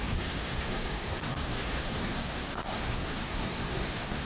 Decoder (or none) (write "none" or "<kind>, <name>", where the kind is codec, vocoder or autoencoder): codec, SNAC